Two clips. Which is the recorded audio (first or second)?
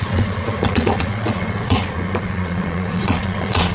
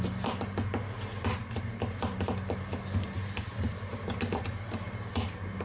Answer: second